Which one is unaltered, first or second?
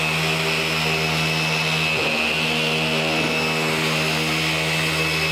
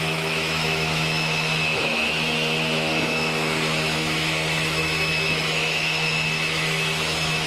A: first